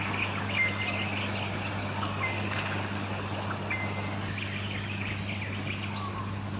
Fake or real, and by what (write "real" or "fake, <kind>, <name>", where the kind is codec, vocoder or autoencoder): real